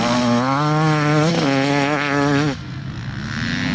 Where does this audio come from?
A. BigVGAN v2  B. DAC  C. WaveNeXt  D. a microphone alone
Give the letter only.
D